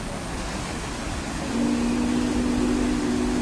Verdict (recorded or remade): recorded